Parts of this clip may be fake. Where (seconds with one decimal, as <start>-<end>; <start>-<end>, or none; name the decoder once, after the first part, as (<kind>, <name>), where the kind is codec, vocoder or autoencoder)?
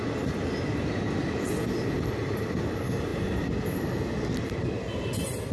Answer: none